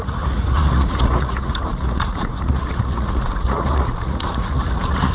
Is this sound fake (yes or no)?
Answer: yes